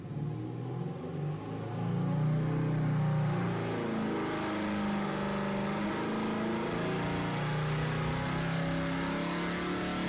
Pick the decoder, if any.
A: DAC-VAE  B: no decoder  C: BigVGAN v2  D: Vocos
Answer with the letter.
B